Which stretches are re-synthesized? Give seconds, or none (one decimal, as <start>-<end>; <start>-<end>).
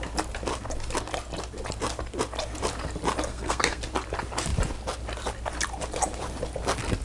3.3-3.8